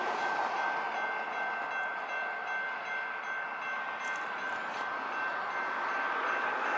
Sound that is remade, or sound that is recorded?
recorded